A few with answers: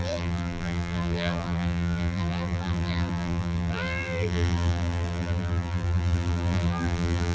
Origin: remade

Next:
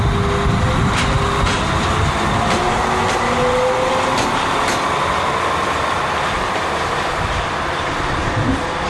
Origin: recorded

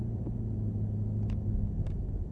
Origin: recorded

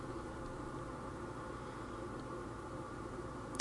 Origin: remade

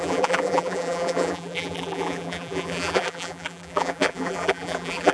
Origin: remade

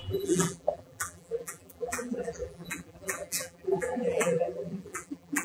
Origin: remade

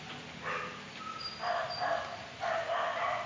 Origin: recorded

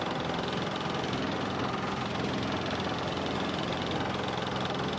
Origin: recorded